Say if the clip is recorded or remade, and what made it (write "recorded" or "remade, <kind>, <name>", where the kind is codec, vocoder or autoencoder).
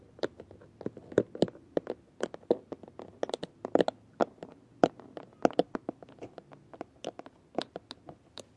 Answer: recorded